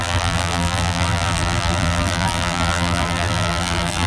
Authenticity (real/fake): fake